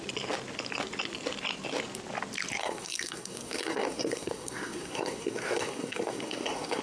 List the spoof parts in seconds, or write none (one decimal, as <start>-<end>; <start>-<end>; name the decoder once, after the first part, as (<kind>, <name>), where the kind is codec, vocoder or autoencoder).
2.6-6.8 (codec, SNAC)